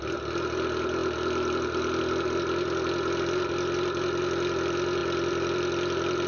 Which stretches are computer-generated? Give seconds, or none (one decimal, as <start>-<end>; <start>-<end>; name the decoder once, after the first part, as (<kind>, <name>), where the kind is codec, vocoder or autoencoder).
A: 1.0-2.0 (vocoder, BigVGAN v2); 5.0-6.3